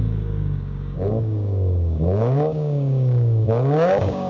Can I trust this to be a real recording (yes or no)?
no